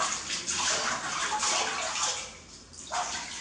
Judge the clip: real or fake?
real